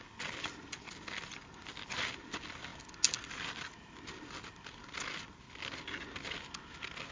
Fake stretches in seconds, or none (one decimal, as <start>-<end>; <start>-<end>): none